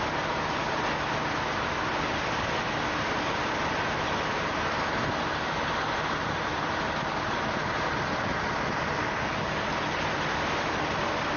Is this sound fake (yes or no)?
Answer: no